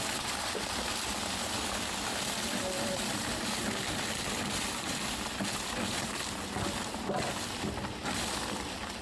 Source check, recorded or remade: recorded